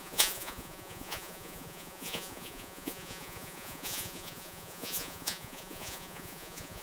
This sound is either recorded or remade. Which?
remade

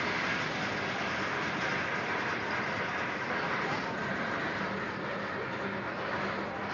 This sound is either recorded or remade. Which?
recorded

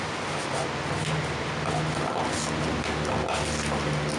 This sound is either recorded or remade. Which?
recorded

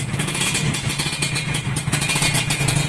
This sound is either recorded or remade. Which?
remade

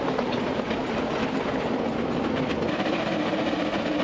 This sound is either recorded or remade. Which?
recorded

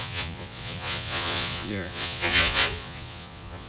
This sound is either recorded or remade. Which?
remade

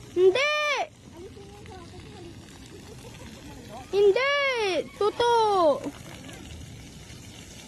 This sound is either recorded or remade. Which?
recorded